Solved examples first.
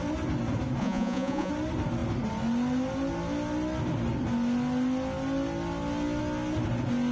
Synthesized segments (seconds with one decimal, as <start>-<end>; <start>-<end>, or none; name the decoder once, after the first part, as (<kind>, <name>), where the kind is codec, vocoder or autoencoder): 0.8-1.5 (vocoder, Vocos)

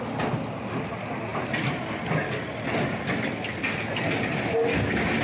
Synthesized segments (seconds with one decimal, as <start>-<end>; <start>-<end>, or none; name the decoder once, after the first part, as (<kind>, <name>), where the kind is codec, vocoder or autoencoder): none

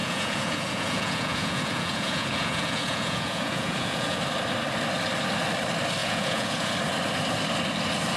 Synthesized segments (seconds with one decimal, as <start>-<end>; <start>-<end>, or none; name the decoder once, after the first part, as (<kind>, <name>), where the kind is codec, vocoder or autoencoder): 0.0-4.2 (vocoder, Vocos); 6.0-6.7